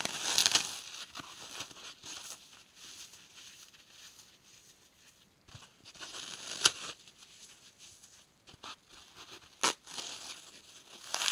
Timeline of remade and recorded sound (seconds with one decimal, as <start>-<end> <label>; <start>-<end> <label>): 0.0-5.7 recorded; 5.7-6.8 remade; 6.8-11.3 recorded